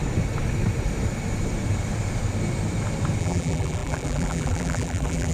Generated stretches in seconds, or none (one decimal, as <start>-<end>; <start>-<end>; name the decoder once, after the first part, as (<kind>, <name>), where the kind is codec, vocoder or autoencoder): 3.2-5.3 (vocoder, BigVGAN v2)